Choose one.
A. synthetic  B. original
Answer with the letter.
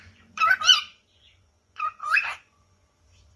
A